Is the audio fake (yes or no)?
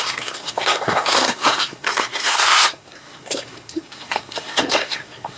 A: yes